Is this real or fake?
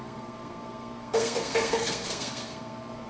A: fake